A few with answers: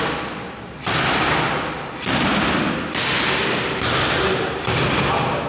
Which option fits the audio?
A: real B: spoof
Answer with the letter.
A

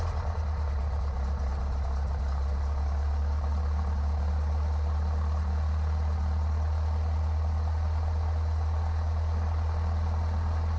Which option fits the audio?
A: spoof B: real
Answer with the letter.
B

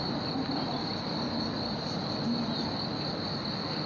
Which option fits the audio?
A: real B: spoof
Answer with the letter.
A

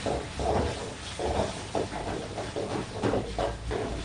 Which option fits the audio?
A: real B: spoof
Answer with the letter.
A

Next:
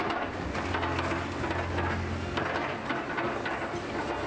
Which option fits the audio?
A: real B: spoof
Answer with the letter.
A